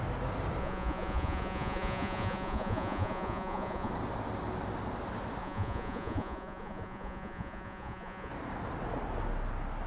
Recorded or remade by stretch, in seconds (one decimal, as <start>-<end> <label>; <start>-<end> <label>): 0.0-0.6 recorded; 0.6-3.9 remade; 3.9-5.4 recorded; 5.4-8.3 remade; 8.3-9.9 recorded